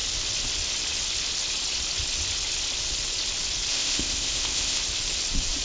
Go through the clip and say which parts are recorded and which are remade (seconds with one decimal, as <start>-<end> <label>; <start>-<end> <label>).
0.0-3.7 recorded; 3.7-4.8 remade; 4.8-5.6 recorded